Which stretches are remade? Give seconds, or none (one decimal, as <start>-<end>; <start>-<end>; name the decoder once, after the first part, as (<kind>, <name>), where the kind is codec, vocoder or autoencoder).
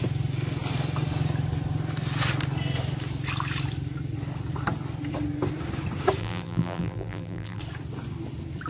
6.2-7.6 (vocoder, BigVGAN v2)